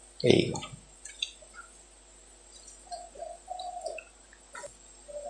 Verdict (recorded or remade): recorded